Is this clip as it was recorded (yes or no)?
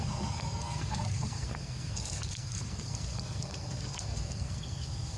no